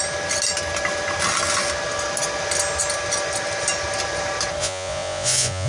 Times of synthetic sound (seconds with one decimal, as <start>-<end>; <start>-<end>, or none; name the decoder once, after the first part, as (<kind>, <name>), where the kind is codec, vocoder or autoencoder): 4.6-5.7 (vocoder, Vocos)